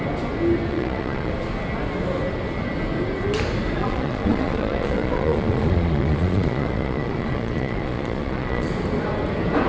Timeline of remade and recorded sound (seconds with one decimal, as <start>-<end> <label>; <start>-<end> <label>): 0.0-0.7 recorded; 0.7-1.3 remade; 1.3-3.8 recorded; 3.8-8.7 remade; 8.7-9.7 recorded